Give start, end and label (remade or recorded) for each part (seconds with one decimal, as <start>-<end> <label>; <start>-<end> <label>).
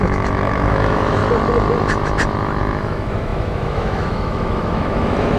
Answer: 0.0-1.2 remade; 1.2-2.6 recorded; 2.6-5.4 remade